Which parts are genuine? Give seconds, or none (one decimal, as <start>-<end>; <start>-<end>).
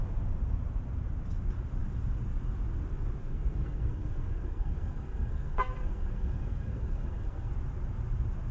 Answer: 0.0-3.2; 7.5-8.5